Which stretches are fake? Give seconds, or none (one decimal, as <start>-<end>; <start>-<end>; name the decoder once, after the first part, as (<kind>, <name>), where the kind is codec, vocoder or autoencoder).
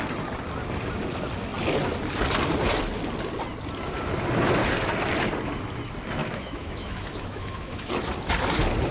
6.2-7.9 (autoencoder, DAC-VAE)